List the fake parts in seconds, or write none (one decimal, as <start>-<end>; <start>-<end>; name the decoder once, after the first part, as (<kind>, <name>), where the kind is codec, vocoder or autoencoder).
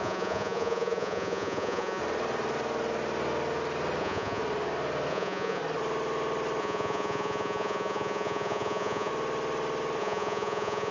0.0-2.0 (vocoder, Vocos); 4.0-4.4; 5.1-5.6; 6.6-9.1; 10.0-10.9